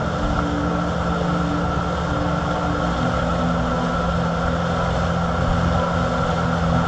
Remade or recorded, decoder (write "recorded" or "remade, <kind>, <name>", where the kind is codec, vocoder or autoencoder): recorded